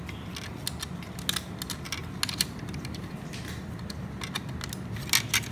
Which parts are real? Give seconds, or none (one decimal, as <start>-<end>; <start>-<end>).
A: 0.0-5.5

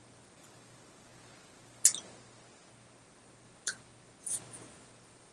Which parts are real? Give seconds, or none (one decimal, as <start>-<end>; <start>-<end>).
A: 0.0-5.3

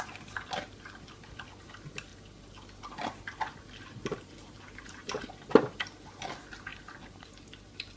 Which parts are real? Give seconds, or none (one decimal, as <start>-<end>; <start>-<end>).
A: 0.0-4.1; 5.2-8.0

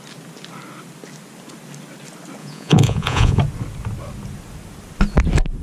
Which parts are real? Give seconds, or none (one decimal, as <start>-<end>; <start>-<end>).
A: 0.0-2.4; 3.4-5.6

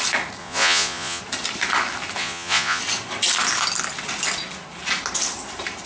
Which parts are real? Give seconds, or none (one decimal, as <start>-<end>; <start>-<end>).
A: 0.0-0.4; 1.2-2.2; 2.8-5.9

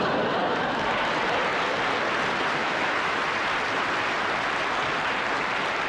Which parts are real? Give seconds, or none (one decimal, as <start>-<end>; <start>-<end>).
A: 0.0-2.6; 3.2-5.9